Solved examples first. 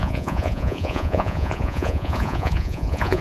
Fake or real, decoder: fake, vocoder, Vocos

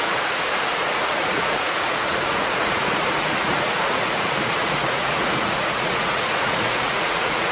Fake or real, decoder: fake, vocoder, Vocos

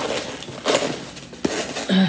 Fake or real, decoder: real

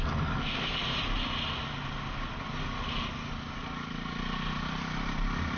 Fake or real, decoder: real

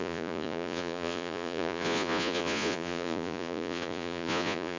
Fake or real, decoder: fake, vocoder, Vocos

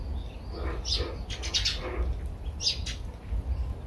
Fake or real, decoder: real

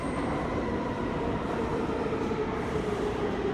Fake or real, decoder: real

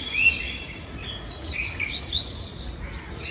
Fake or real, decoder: fake, vocoder, Vocos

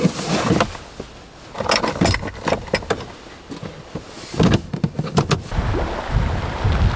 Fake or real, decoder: real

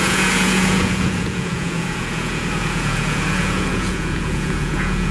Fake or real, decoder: fake, vocoder, Vocos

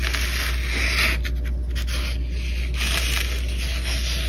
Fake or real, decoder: real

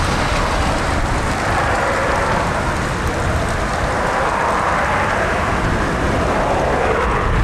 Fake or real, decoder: real